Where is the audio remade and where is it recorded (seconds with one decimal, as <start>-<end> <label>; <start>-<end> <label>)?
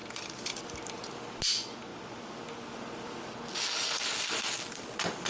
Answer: 0.0-5.3 recorded